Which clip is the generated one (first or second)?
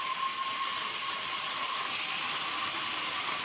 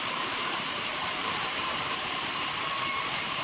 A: second